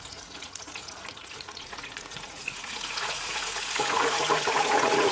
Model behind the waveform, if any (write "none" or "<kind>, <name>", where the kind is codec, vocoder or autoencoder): vocoder, Vocos